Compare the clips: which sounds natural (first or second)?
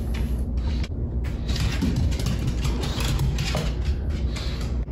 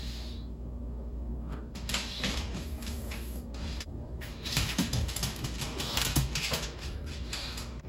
first